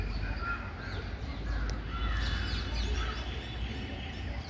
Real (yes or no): yes